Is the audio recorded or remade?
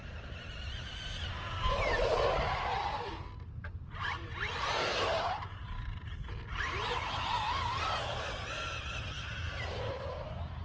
recorded